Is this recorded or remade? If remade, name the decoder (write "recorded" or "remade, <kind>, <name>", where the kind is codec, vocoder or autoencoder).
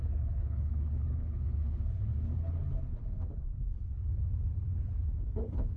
remade, codec, HILCodec